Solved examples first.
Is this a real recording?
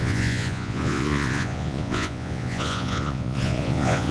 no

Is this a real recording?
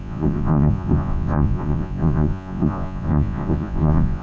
no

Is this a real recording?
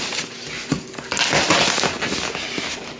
yes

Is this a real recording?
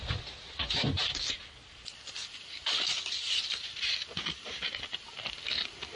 yes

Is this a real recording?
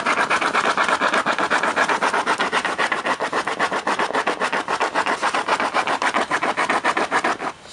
yes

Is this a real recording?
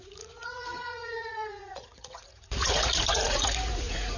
no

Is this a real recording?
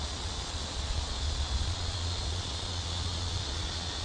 no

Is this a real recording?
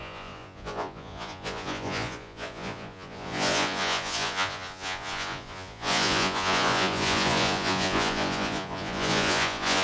no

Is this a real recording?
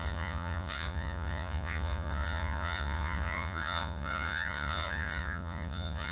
no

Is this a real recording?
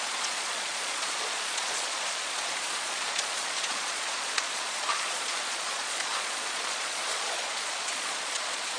no